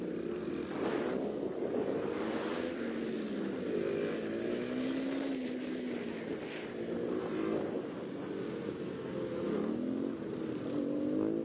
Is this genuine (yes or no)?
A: yes